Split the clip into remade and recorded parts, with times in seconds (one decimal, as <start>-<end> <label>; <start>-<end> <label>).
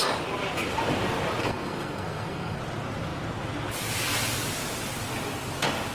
0.0-1.4 recorded; 1.4-2.6 remade; 2.6-5.9 recorded